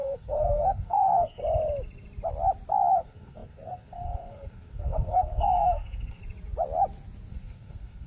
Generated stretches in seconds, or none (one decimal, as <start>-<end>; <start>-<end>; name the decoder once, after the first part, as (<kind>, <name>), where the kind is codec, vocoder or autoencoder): 0.0-1.4 (codec, SNAC); 3.0-6.2; 7.3-8.1